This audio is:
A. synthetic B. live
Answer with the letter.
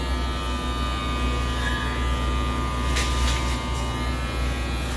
B